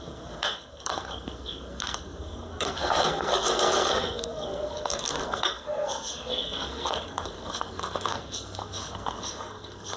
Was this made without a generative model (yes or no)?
no